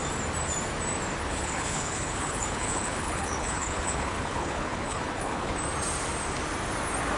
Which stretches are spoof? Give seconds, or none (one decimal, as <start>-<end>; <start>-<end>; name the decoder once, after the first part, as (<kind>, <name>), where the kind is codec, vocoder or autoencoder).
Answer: 1.3-5.5 (codec, HILCodec)